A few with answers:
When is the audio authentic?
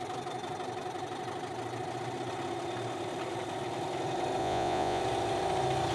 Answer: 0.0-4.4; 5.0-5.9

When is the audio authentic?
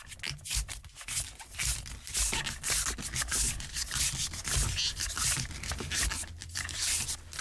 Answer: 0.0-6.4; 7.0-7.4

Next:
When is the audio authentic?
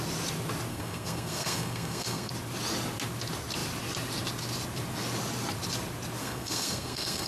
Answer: 0.0-0.7; 2.3-6.2